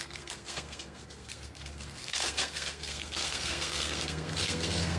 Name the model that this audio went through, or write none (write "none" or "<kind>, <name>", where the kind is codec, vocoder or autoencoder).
codec, SNAC